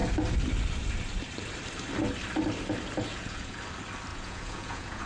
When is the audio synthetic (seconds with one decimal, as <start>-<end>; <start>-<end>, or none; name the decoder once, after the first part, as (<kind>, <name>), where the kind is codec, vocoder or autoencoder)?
3.1-3.6 (vocoder, Vocos); 4.1-5.1